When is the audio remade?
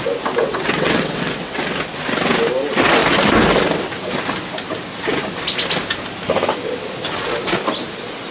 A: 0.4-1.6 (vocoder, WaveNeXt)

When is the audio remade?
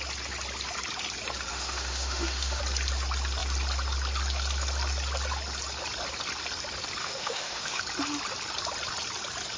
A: 1.5-2.6 (autoencoder, DAC-VAE); 7.0-7.8